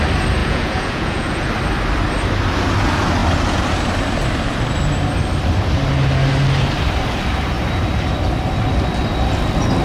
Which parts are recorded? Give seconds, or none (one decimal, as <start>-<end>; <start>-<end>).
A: 0.0-0.4; 1.5-9.8